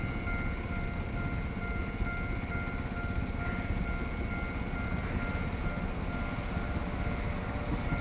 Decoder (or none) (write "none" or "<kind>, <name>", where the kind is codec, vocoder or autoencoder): none